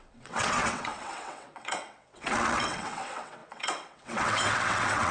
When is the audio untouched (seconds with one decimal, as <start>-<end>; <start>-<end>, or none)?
none